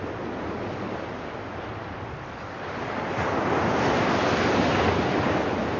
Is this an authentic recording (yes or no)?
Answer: yes